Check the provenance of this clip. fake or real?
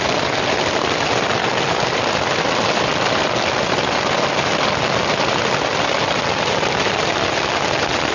real